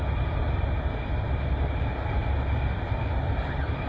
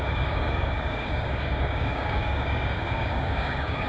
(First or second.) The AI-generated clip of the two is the second